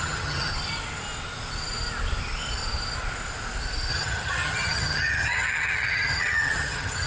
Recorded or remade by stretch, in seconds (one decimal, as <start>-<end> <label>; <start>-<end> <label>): 0.0-0.5 remade; 0.5-3.9 recorded; 3.9-7.1 remade